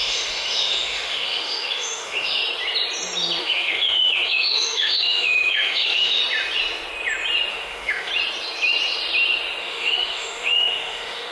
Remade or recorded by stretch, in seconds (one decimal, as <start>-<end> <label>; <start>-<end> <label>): 0.0-2.4 remade; 2.4-3.4 recorded; 3.4-6.2 remade; 6.2-7.5 recorded; 7.5-8.1 remade; 8.1-9.6 recorded; 9.6-11.3 remade